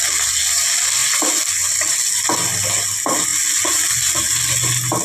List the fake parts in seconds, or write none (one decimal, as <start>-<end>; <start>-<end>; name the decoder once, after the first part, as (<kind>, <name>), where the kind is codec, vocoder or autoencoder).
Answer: none